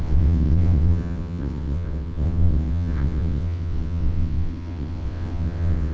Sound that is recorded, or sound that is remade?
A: remade